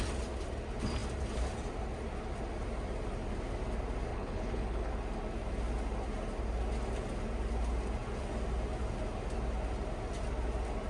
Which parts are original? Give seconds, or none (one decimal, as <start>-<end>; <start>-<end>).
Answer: 0.0-4.1; 4.9-10.9

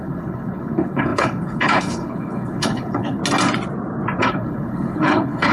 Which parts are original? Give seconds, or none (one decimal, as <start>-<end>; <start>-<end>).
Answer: 3.2-4.2

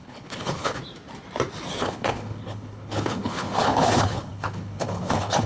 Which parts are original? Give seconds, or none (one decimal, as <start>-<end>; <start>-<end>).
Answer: 0.8-1.8

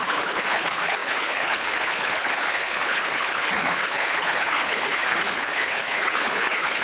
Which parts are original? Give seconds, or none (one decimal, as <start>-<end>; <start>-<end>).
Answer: none

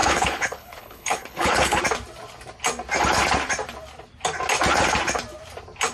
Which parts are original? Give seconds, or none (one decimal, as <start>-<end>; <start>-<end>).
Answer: 1.8-5.9

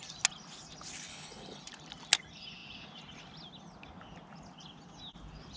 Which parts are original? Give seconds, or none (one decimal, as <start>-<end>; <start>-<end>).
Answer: 0.0-1.1; 1.6-5.6

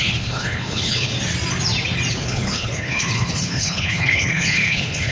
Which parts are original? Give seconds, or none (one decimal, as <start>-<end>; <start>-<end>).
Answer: 1.1-2.1

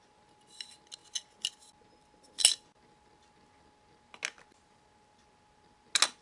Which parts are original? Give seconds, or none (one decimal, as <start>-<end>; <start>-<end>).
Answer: 0.0-6.2